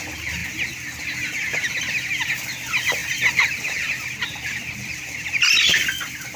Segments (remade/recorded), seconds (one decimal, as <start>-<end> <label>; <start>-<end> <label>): 0.0-3.0 recorded; 3.0-5.2 remade; 5.2-6.4 recorded